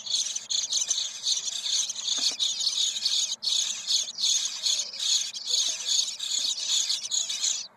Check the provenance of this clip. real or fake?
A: real